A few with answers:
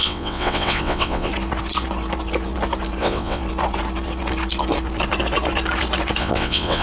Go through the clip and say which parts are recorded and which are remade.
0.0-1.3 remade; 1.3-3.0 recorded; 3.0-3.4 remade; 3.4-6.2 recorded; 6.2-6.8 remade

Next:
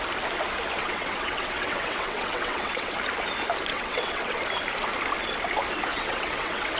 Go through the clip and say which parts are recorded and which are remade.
0.0-0.8 recorded; 0.8-2.9 remade; 2.9-3.7 recorded; 3.7-4.4 remade; 4.4-5.9 recorded; 5.9-6.8 remade